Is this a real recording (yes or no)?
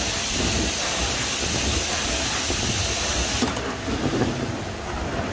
yes